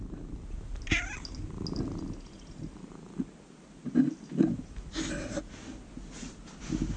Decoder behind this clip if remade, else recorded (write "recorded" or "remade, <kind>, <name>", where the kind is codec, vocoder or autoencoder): recorded